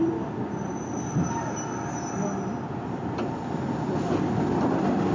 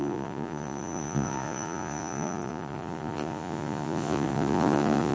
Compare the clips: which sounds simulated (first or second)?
second